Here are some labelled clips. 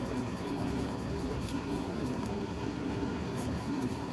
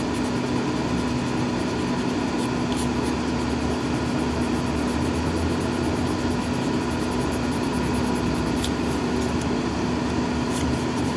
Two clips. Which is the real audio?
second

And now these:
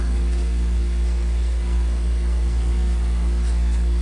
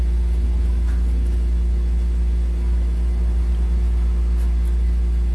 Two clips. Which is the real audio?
second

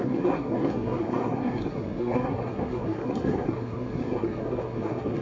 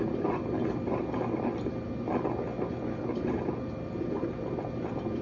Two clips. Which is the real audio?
second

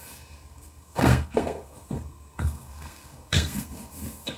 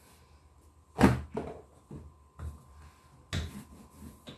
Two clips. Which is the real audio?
second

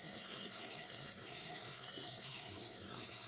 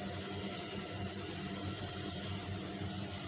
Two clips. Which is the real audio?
second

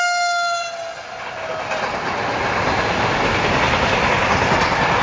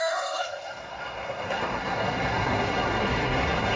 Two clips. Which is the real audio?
first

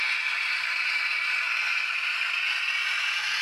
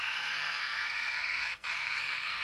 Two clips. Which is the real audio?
first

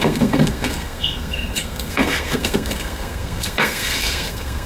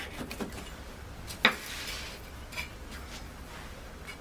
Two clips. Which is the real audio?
second